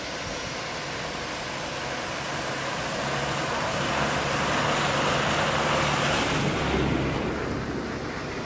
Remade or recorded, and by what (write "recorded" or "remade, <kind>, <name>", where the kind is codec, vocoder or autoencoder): recorded